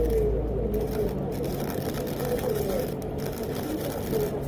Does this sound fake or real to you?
real